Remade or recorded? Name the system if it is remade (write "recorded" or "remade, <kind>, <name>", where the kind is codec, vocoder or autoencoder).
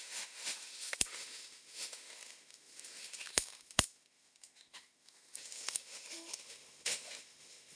remade, autoencoder, DAC-VAE